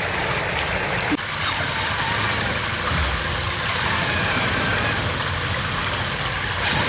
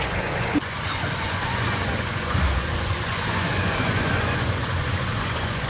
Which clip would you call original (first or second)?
first